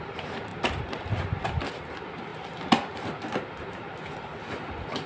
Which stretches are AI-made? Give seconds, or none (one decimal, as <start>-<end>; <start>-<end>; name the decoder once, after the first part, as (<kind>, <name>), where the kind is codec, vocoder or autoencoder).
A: none

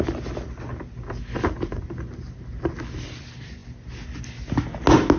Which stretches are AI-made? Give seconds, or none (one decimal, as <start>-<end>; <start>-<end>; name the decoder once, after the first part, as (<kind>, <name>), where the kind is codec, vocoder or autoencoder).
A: none

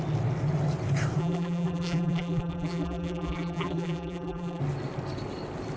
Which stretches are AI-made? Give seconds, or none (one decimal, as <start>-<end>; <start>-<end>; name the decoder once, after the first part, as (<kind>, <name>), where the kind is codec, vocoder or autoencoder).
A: 1.2-4.6 (vocoder, BigVGAN v2)

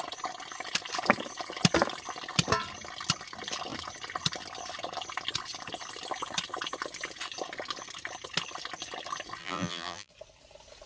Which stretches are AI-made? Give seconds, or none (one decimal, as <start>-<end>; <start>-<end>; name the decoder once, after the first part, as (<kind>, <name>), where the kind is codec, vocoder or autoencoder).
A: 9.4-10.1 (vocoder, BigVGAN v2)

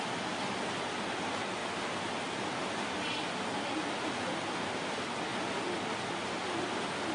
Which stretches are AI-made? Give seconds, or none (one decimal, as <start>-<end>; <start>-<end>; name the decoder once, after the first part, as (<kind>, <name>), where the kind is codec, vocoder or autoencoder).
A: none

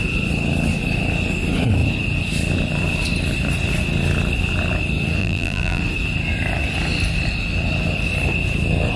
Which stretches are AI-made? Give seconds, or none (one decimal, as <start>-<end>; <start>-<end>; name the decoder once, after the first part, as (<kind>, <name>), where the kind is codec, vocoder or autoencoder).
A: 5.2-5.8 (vocoder, BigVGAN v2)